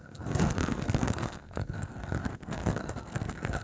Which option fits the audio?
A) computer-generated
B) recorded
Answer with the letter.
A